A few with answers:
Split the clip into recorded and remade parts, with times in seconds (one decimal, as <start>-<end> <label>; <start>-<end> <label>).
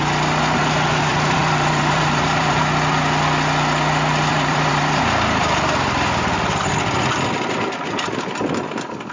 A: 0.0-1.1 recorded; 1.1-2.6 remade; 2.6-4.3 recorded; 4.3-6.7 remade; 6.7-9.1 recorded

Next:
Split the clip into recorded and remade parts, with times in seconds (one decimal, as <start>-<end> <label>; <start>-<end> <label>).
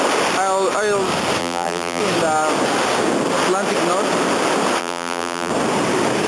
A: 0.0-1.4 recorded; 1.4-2.0 remade; 2.0-4.8 recorded; 4.8-5.5 remade; 5.5-6.3 recorded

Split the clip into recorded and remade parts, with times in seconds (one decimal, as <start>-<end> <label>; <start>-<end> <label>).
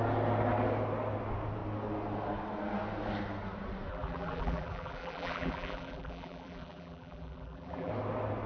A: 0.0-3.9 recorded; 3.9-7.9 remade; 7.9-8.5 recorded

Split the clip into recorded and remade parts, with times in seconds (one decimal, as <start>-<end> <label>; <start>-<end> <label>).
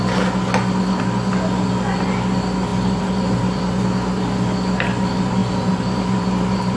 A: 0.0-2.7 recorded; 2.7-3.7 remade; 3.7-5.4 recorded; 5.4-6.8 remade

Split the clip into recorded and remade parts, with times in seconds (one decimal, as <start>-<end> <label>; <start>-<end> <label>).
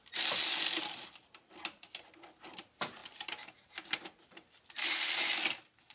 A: 0.0-5.9 recorded